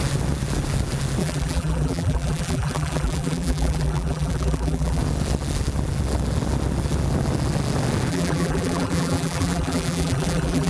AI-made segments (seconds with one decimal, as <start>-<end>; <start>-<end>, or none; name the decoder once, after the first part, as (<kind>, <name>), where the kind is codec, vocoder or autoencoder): 1.2-5.0 (vocoder, BigVGAN v2); 8.1-10.7